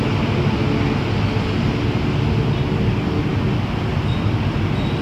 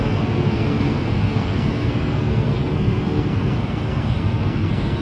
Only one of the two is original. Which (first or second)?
first